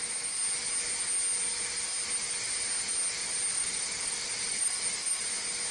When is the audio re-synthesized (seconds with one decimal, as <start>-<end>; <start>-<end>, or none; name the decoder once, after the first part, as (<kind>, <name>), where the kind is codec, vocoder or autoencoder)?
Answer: 3.5-5.2 (vocoder, BigVGAN v2)